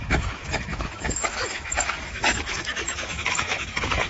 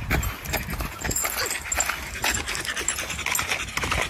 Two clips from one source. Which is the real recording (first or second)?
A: second